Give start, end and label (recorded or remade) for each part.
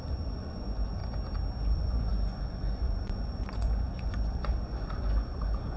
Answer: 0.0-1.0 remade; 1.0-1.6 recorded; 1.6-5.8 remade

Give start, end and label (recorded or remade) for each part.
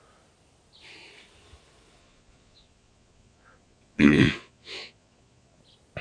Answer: 0.0-2.0 recorded; 2.0-5.6 remade; 5.6-6.0 recorded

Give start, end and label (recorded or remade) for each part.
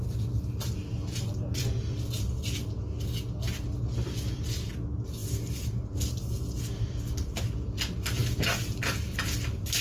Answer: 0.0-9.8 recorded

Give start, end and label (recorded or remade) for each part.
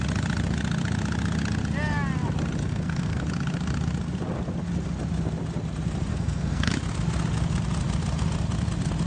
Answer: 0.0-2.6 recorded; 2.6-3.2 remade; 3.2-6.1 recorded; 6.1-6.7 remade; 6.7-9.1 recorded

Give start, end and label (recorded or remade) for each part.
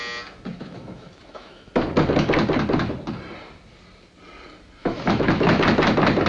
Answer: 0.0-0.5 recorded; 0.5-1.7 remade; 1.7-4.8 recorded; 4.8-5.6 remade; 5.6-6.3 recorded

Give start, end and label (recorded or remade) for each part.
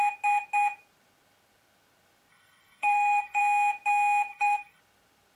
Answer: 0.0-2.3 recorded; 2.3-3.4 remade; 3.4-4.3 recorded; 4.3-4.8 remade; 4.8-5.4 recorded